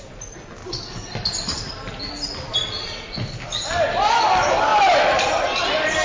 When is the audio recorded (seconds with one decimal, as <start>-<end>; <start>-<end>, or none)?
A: 0.0-6.0

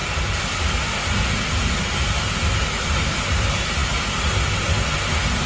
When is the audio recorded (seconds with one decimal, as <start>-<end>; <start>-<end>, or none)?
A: 0.0-5.5

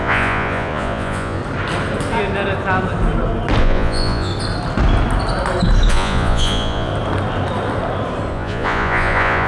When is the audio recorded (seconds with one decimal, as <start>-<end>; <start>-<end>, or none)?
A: 1.4-3.6; 4.3-5.9; 6.9-8.3

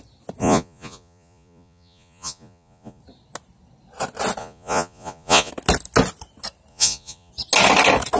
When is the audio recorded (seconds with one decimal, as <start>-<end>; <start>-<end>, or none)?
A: 0.0-0.4; 3.0-4.4; 5.5-6.7; 7.3-8.2

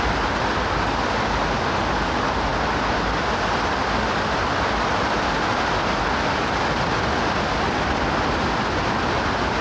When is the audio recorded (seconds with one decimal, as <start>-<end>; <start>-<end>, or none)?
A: 0.0-9.6

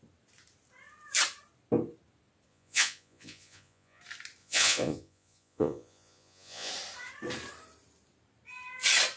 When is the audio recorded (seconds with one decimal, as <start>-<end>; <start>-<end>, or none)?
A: 0.0-2.5; 4.0-4.4; 6.7-9.2

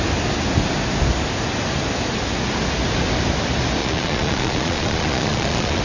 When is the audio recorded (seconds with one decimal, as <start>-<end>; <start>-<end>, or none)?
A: 0.0-3.8

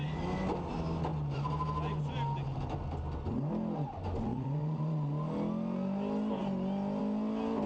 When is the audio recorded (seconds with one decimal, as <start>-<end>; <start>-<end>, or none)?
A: 0.0-4.3; 5.1-7.7